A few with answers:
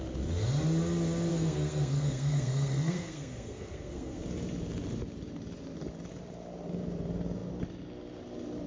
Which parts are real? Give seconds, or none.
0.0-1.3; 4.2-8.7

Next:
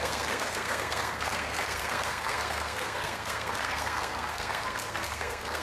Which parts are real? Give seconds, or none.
none

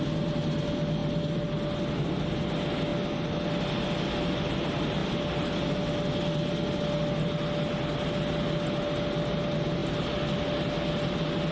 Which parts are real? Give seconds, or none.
0.0-11.5